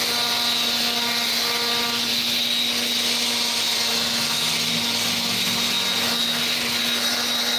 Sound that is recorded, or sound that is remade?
recorded